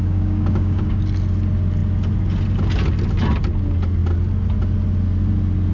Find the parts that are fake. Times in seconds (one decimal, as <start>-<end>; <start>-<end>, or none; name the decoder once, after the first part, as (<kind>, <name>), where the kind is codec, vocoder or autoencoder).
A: 0.0-1.0 (codec, DAC)